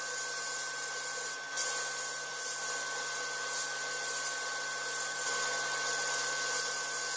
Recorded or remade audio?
recorded